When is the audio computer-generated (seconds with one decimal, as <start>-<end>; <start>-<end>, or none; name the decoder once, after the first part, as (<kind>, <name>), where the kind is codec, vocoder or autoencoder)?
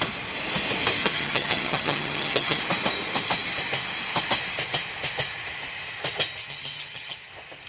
1.0-2.6 (vocoder, HiFi-GAN); 6.4-7.3